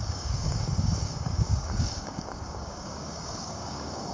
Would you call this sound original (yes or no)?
no